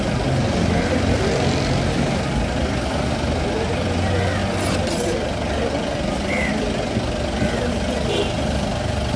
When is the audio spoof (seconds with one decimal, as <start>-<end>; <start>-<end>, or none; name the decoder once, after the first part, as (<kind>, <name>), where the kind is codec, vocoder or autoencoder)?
none